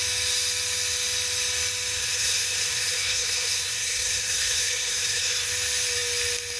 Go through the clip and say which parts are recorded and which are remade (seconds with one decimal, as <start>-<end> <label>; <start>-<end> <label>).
0.0-2.0 recorded; 2.0-5.5 remade; 5.5-6.6 recorded